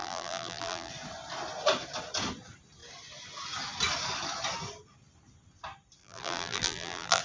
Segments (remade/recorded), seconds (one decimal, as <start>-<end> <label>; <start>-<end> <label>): 0.0-0.9 remade; 0.9-6.0 recorded; 6.0-7.2 remade